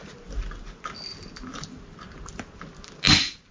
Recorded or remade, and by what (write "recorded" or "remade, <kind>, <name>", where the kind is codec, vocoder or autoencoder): recorded